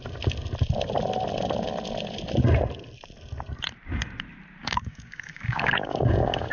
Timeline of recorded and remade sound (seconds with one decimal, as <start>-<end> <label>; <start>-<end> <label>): 0.0-4.6 recorded; 4.6-6.5 remade